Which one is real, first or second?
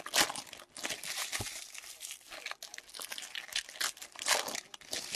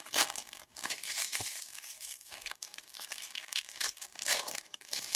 first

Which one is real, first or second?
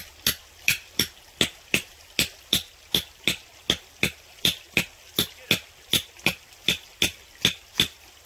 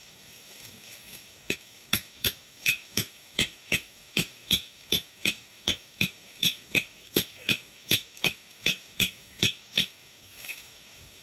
first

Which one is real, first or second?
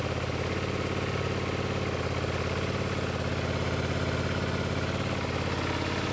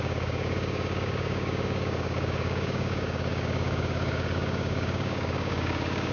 first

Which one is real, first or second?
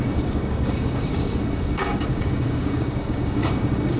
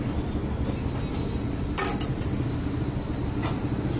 second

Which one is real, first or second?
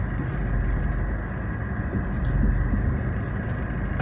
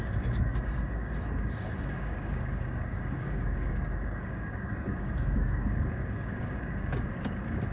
first